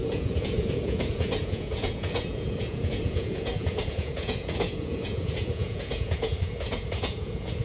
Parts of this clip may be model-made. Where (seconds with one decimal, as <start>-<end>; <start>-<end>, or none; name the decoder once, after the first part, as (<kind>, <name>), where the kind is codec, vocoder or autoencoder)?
0.0-7.6 (vocoder, Vocos)